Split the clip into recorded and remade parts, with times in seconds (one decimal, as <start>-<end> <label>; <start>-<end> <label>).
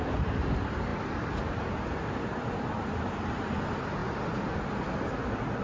0.0-5.6 recorded